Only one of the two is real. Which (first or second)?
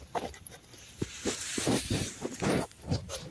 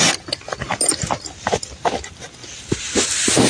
second